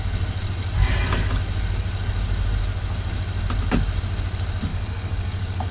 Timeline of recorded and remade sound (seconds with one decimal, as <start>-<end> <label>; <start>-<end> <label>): 0.0-4.7 recorded; 4.7-5.7 remade